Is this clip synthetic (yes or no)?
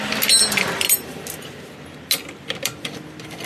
no